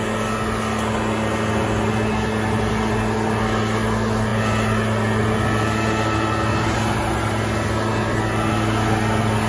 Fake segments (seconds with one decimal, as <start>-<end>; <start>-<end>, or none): none